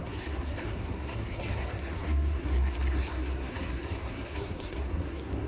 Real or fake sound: fake